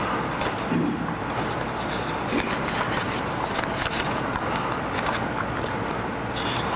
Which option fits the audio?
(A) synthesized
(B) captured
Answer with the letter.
B